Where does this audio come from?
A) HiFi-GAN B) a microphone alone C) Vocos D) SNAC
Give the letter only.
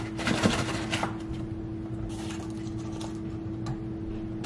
B